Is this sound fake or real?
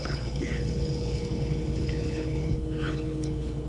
fake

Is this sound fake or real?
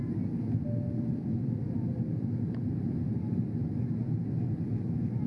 real